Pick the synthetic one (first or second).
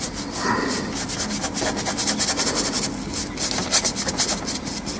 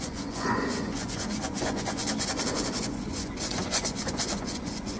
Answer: second